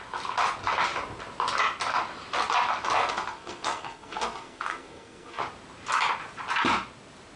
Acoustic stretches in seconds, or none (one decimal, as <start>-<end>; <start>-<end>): 0.0-3.0; 5.4-7.4

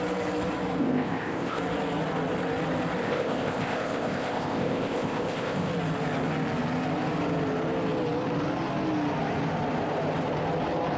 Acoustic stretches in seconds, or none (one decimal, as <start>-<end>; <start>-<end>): 0.0-0.8; 1.6-3.0; 5.7-11.0

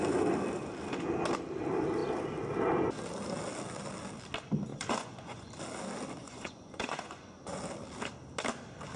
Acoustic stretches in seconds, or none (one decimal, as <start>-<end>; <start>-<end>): 0.0-4.7; 5.5-6.2; 7.6-9.0

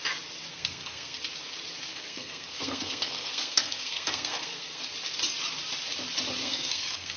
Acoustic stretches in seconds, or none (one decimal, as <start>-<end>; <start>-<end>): 0.0-0.5; 1.2-1.9; 4.9-6.4

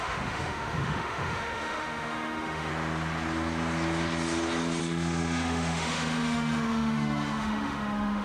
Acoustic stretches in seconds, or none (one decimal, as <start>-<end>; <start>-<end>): 2.7-4.8